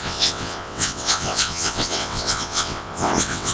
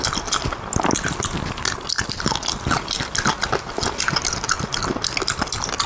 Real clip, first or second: second